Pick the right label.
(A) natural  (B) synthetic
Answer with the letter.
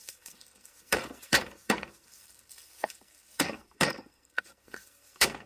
B